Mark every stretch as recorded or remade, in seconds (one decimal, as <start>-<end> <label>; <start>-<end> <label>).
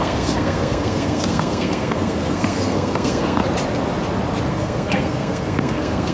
0.0-3.4 remade; 3.4-4.5 recorded; 4.5-6.1 remade